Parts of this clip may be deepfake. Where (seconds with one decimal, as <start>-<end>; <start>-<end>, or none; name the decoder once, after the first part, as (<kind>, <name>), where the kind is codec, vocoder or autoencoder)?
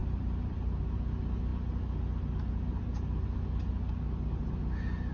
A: 0.0-0.8 (vocoder, BigVGAN v2)